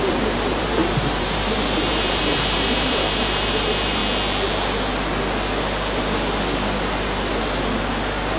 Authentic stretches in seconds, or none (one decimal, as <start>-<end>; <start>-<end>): 4.0-8.4